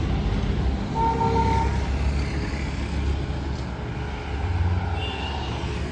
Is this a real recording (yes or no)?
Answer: yes